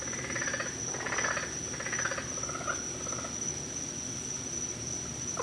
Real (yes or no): yes